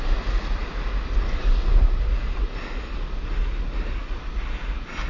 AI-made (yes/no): no